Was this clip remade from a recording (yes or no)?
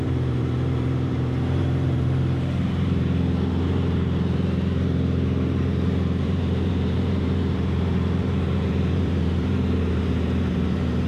yes